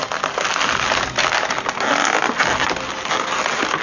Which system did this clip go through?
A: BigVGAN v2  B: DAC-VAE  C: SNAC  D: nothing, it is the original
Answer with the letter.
D